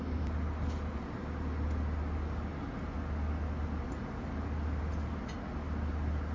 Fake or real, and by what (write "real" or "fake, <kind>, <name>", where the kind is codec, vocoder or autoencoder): real